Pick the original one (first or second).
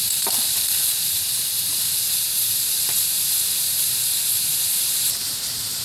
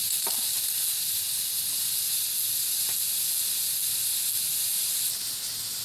second